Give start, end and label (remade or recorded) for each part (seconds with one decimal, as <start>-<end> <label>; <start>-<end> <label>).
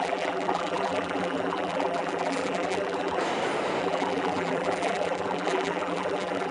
0.0-3.2 remade; 3.2-3.8 recorded; 3.8-6.5 remade